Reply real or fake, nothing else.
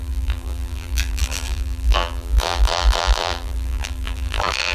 fake